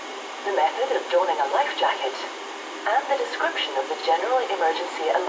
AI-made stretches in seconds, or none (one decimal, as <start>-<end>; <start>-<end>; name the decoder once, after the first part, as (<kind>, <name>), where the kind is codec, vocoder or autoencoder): 1.1-2.4 (vocoder, BigVGAN v2)